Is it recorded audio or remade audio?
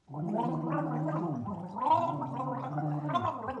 recorded